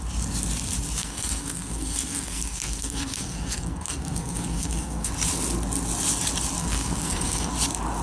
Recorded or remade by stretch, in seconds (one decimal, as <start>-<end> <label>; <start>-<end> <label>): 0.0-1.0 recorded; 1.0-5.1 remade; 5.1-6.6 recorded; 6.6-7.5 remade; 7.5-8.0 recorded